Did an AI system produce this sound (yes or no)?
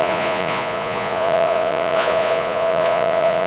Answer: yes